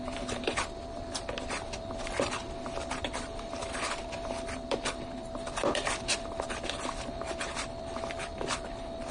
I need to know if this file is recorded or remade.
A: remade